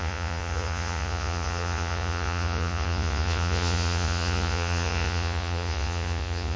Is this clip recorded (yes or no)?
no